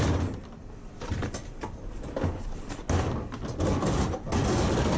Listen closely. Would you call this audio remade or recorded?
recorded